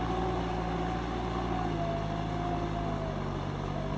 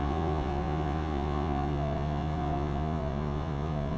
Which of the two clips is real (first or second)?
first